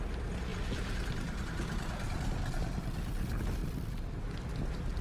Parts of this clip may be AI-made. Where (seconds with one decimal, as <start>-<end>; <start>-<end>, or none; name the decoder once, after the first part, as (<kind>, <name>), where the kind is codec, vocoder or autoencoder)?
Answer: none